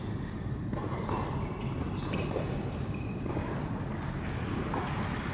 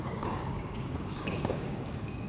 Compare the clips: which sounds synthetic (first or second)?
second